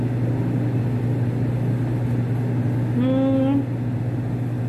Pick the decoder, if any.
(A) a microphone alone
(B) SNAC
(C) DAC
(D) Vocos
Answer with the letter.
A